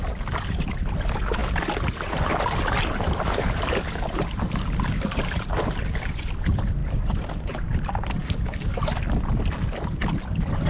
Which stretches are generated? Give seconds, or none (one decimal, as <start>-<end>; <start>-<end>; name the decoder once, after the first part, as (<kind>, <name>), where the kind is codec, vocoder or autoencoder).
8.2-8.8 (codec, DAC)